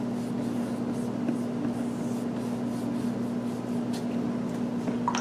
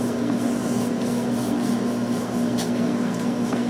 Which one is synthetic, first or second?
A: second